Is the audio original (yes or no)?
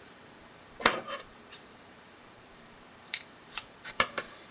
no